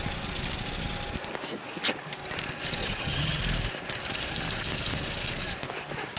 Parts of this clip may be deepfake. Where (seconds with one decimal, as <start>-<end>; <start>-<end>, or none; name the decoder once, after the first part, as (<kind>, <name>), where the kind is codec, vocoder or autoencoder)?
2.8-3.4 (vocoder, HiFi-GAN)